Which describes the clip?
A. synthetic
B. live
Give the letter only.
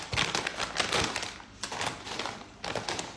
B